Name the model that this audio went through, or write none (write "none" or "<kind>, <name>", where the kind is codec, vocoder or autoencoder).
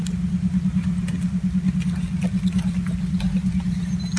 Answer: none